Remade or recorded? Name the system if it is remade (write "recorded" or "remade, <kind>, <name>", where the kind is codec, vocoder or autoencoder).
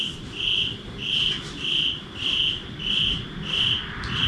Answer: recorded